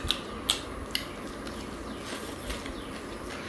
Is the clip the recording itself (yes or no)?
yes